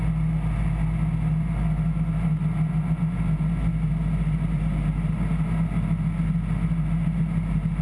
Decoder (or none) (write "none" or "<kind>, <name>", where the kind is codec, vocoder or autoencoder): none